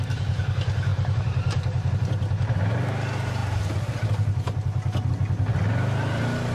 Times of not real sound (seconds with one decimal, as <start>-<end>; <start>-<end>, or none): 0.9-1.9